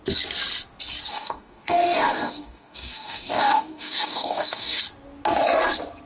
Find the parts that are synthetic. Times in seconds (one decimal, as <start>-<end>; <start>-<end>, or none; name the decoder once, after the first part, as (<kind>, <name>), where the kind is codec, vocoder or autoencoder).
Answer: 1.1-4.8 (codec, DAC)

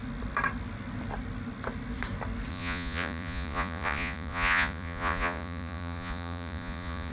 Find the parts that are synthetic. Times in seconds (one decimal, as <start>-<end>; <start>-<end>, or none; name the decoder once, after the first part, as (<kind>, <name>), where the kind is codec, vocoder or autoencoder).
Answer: 2.5-7.1 (vocoder, Vocos)

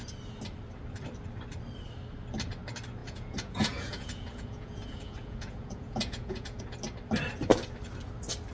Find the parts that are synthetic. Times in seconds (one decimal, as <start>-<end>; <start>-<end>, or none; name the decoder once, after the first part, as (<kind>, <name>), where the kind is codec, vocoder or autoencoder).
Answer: 3.0-6.6 (vocoder, Vocos)